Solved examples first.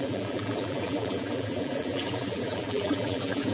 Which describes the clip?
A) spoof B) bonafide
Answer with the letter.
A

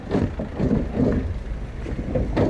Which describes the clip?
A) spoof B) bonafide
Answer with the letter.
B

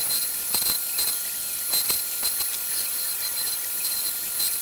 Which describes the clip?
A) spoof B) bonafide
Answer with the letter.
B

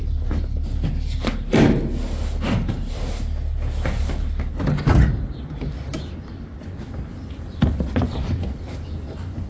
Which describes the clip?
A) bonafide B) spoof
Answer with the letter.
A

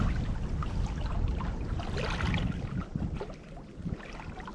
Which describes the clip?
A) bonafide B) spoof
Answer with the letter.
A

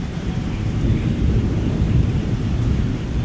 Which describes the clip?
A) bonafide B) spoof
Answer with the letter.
B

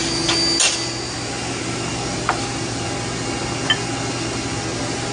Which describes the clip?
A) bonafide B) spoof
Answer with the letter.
A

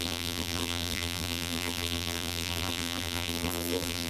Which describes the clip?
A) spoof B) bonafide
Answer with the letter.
A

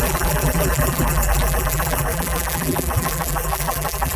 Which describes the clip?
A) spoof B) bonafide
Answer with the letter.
A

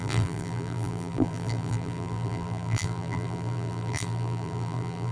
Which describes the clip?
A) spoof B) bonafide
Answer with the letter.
A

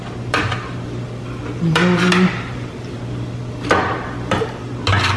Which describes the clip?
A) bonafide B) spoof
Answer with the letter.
A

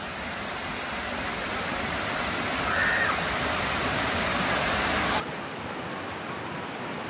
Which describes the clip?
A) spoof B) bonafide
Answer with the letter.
B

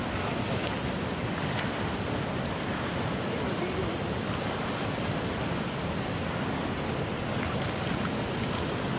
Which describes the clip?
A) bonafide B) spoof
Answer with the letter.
A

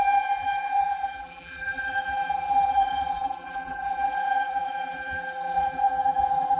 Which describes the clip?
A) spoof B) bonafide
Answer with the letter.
A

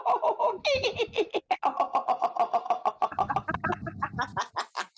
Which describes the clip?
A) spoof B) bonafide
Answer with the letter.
B